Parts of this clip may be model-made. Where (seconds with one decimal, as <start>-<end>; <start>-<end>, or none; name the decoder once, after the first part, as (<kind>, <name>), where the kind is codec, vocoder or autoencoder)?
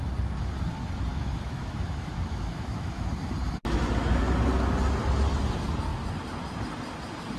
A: 1.1-3.1 (autoencoder, DAC-VAE)